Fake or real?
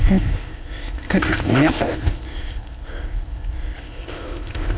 fake